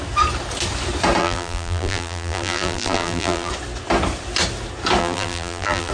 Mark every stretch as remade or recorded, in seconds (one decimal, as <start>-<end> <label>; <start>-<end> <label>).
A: 0.0-1.2 recorded; 1.2-3.5 remade; 3.5-5.0 recorded; 5.0-5.9 remade